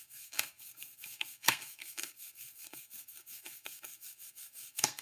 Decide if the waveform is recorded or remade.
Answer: remade